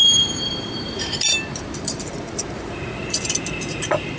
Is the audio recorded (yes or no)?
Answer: no